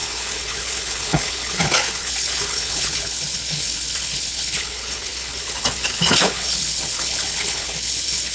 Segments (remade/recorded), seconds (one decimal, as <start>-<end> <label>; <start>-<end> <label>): 0.0-8.3 remade